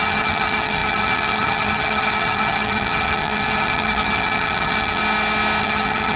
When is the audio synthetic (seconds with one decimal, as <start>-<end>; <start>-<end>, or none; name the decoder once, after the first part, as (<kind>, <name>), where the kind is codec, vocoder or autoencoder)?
0.0-5.0 (vocoder, HiFi-GAN); 5.6-6.2